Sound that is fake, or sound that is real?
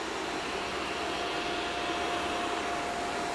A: real